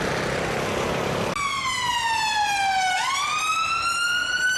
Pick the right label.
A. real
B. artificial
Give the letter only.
A